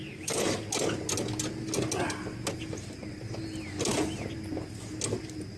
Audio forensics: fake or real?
real